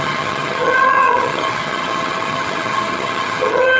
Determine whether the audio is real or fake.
fake